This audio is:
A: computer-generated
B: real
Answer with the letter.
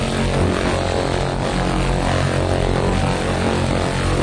B